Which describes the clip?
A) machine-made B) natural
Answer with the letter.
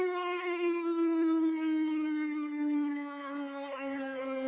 A